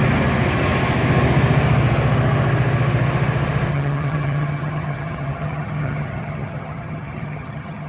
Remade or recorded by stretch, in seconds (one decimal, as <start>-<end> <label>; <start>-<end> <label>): 0.0-3.7 recorded; 3.7-7.9 remade